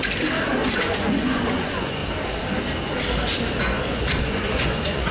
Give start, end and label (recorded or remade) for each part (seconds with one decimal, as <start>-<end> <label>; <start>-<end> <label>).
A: 0.0-0.7 recorded; 0.7-2.0 remade; 2.0-3.6 recorded; 3.6-5.1 remade